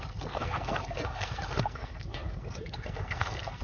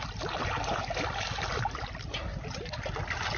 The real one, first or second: second